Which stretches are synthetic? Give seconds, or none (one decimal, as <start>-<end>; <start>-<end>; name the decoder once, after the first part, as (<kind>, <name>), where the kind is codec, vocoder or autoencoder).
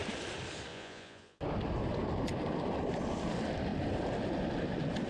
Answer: 0.7-1.4 (vocoder, Vocos)